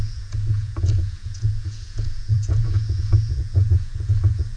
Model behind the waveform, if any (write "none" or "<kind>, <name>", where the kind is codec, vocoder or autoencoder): vocoder, Vocos